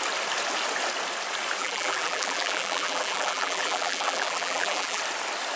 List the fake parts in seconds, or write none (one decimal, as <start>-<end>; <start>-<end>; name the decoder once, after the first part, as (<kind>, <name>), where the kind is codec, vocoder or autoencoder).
1.6-5.0 (vocoder, BigVGAN v2)